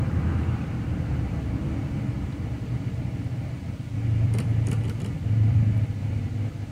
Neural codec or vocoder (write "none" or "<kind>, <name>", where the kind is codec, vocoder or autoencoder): vocoder, BigVGAN v2